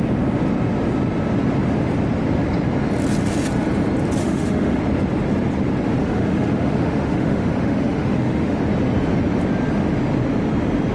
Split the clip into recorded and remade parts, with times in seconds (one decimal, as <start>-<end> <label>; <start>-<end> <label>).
0.0-4.2 recorded; 4.2-4.8 remade; 4.8-6.0 recorded; 6.0-8.6 remade; 8.6-10.9 recorded

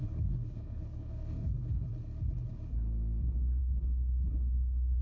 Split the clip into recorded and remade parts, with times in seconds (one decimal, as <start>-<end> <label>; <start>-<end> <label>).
0.0-1.9 remade; 1.9-3.6 recorded; 3.6-5.0 remade